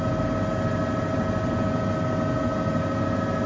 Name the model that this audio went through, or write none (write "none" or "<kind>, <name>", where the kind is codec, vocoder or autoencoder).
none